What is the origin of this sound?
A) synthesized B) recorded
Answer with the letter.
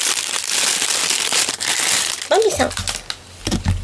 B